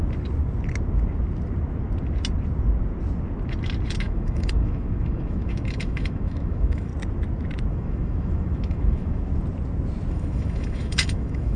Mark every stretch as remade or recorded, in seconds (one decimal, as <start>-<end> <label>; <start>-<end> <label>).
0.0-4.0 recorded; 4.0-6.9 remade; 6.9-7.7 recorded; 7.7-9.3 remade; 9.3-10.1 recorded; 10.1-11.6 remade